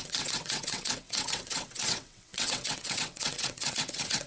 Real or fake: fake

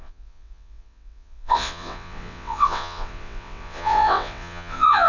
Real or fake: fake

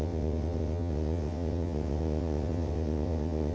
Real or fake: fake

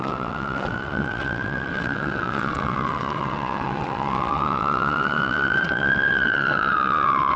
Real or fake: fake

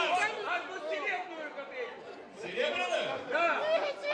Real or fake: real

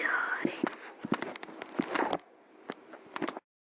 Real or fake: real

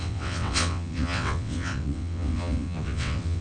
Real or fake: fake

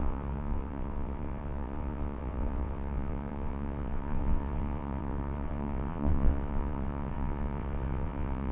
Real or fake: fake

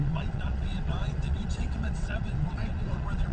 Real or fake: fake